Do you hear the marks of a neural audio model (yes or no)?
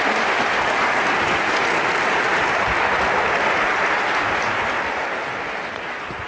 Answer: no